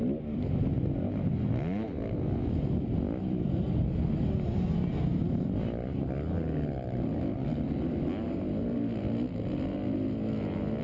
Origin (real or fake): real